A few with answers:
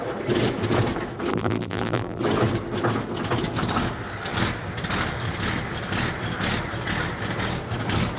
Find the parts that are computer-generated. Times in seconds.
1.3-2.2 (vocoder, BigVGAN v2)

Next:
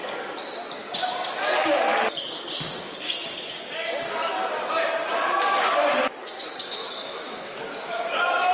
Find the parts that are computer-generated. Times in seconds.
6.2-8.5 (autoencoder, DAC-VAE)